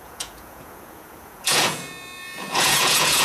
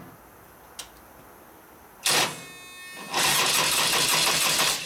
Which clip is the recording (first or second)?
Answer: second